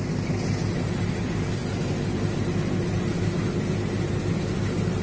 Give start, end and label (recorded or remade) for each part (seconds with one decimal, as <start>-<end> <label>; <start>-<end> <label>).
0.0-5.0 recorded